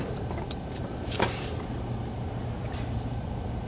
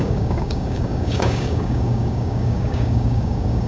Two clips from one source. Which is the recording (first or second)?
first